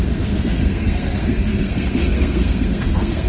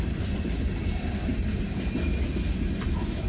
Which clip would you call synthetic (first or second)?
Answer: first